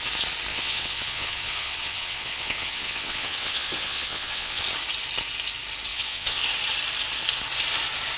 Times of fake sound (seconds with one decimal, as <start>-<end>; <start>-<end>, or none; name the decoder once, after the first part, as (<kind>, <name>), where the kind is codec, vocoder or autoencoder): 0.5-4.6 (vocoder, WaveNeXt); 5.9-6.4